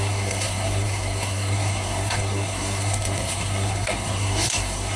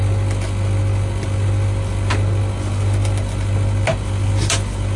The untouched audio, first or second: second